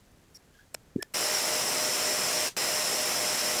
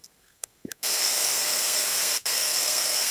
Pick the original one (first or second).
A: first